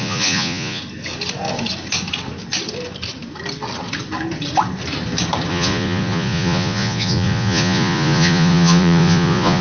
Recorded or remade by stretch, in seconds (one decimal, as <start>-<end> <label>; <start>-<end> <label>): 0.0-0.8 remade; 0.8-5.5 recorded; 5.5-9.6 remade